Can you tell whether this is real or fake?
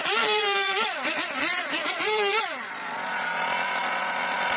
fake